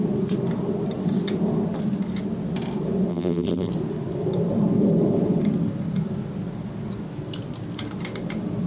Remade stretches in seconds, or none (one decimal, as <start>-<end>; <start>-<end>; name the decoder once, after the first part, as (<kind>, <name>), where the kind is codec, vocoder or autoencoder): 3.1-3.7 (vocoder, BigVGAN v2)